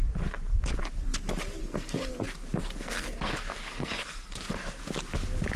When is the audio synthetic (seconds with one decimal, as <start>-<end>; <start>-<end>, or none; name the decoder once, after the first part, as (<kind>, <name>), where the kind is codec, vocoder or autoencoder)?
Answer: 1.6-2.1 (codec, SNAC); 2.6-4.8